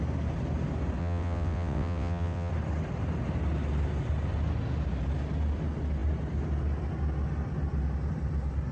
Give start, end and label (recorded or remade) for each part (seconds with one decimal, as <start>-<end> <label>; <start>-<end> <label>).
0.0-1.0 recorded; 1.0-2.5 remade; 2.5-8.7 recorded